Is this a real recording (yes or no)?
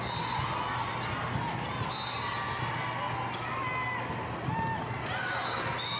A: yes